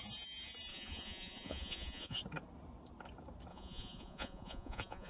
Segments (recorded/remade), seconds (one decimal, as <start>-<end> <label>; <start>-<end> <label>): 0.0-0.7 recorded; 0.7-2.2 remade; 2.2-3.5 recorded; 3.5-5.1 remade